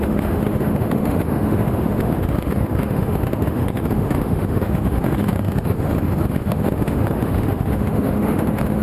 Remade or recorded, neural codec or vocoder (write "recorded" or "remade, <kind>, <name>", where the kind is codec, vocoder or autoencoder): remade, autoencoder, DAC-VAE